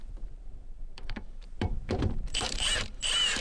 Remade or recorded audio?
remade